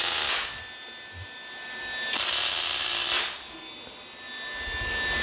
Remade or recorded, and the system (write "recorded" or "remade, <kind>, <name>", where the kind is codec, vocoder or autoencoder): recorded